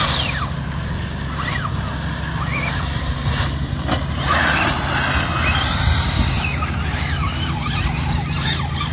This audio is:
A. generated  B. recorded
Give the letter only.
B